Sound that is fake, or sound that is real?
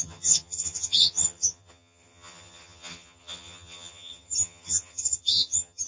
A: fake